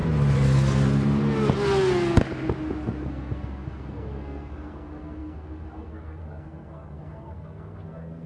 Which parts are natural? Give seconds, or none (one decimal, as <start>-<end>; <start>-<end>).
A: 0.0-3.1

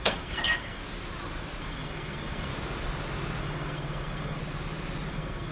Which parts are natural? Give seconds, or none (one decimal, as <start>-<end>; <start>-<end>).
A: 0.8-1.6; 2.5-3.4; 4.4-5.1

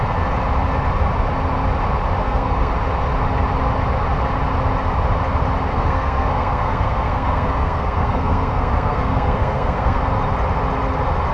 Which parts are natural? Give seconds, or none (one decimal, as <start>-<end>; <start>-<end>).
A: 0.0-2.2; 2.7-5.7; 10.0-11.3

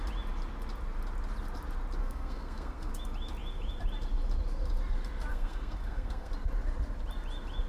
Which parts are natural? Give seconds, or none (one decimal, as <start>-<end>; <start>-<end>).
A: 0.0-2.0; 2.9-5.3; 6.3-7.7

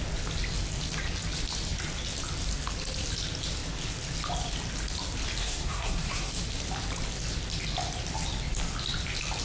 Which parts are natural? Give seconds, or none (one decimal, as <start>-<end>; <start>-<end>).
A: 0.0-5.4; 6.3-9.4

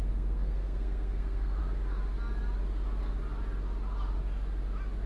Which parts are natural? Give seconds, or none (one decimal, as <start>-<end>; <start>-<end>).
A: 1.6-5.1